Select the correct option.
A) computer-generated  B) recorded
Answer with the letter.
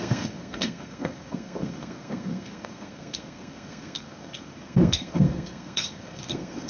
A